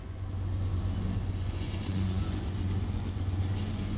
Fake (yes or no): yes